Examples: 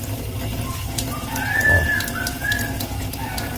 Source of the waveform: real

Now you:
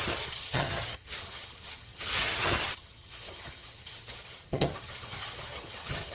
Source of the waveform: fake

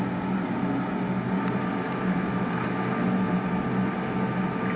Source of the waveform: real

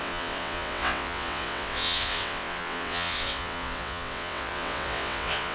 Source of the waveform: fake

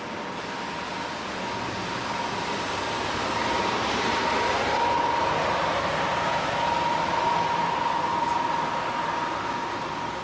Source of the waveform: real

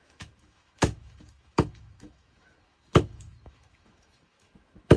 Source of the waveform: fake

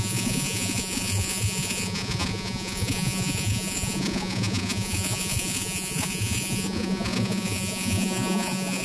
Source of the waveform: fake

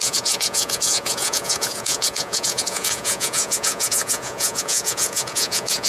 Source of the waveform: fake